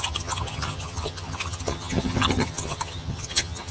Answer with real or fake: fake